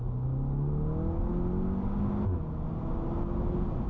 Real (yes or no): yes